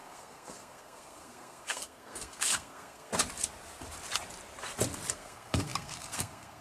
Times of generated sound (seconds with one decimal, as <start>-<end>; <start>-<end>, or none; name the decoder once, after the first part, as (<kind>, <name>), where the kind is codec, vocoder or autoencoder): 0.0-3.1 (codec, SNAC); 5.1-6.6